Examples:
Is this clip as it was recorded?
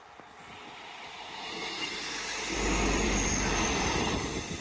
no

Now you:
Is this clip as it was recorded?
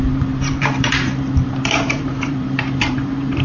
no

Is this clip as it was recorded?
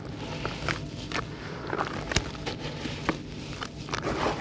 yes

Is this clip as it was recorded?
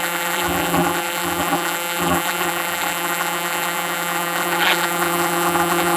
no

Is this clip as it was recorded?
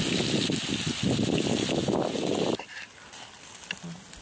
yes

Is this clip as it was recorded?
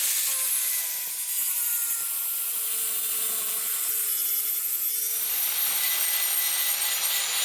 yes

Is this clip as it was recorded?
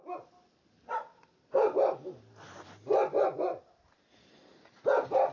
yes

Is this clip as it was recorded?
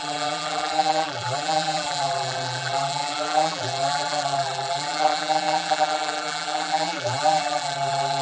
no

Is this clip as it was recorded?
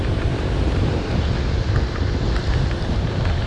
no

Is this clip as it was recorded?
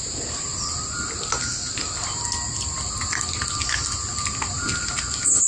yes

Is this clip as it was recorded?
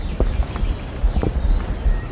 yes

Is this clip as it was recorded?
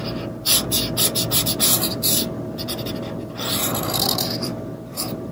no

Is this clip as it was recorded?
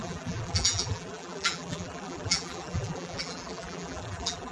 no